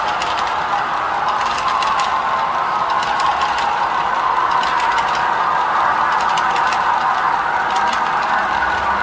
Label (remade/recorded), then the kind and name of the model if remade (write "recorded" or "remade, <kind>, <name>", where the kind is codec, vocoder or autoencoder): recorded